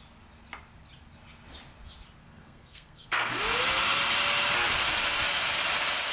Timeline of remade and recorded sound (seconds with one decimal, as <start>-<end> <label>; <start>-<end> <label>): 0.0-2.2 recorded; 2.2-3.3 remade; 3.3-6.1 recorded